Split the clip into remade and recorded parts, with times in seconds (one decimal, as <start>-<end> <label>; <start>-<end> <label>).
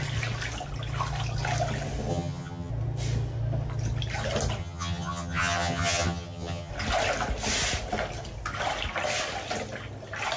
0.0-2.1 recorded; 2.1-2.7 remade; 2.7-4.6 recorded; 4.6-6.7 remade; 6.7-10.4 recorded